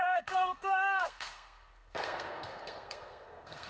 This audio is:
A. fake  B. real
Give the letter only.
A